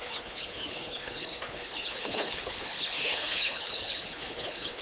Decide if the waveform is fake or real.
fake